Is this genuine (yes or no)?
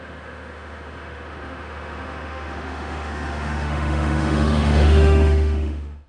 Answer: no